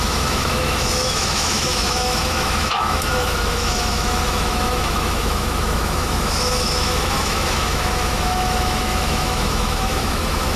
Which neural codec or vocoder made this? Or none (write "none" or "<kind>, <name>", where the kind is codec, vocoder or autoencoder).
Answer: autoencoder, DAC-VAE